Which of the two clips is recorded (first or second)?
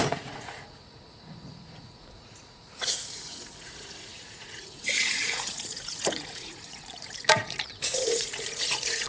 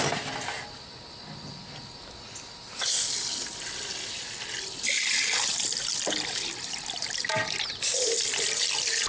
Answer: second